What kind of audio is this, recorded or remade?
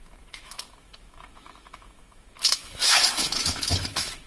remade